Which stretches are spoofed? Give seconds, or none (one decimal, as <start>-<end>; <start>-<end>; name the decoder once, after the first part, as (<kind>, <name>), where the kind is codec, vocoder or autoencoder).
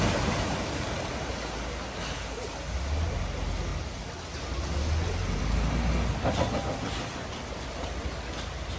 3.7-4.2 (vocoder, BigVGAN v2)